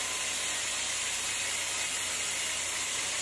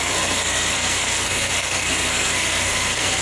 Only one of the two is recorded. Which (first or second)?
first